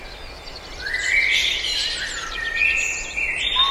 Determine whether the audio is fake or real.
real